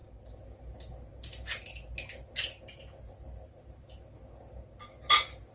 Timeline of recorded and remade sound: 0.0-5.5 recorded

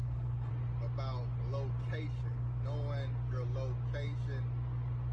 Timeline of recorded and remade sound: 0.0-0.5 remade; 0.5-5.1 recorded

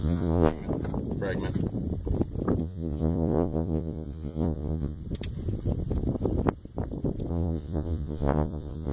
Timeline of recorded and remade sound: 0.0-0.6 remade; 0.6-2.6 recorded; 2.6-5.0 remade; 5.0-7.3 recorded; 7.3-8.9 remade

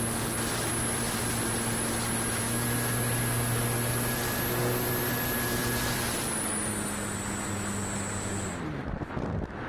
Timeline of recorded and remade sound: 0.0-5.6 recorded; 5.6-6.7 remade; 6.7-9.7 recorded

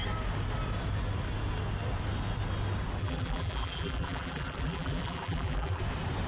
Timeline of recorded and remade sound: 0.0-3.0 recorded; 3.0-5.8 remade; 5.8-6.3 recorded

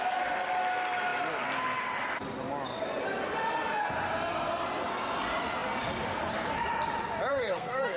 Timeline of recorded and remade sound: 0.0-7.3 recorded; 7.3-8.0 remade

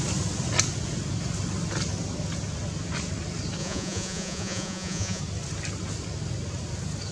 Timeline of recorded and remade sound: 0.0-3.6 recorded; 3.6-5.2 remade; 5.2-7.1 recorded